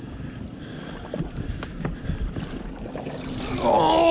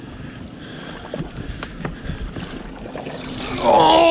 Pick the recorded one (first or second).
second